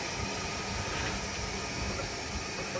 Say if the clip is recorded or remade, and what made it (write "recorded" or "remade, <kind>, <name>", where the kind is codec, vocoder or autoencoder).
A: recorded